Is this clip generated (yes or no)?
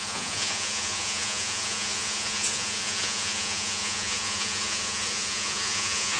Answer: yes